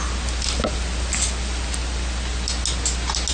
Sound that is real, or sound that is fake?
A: real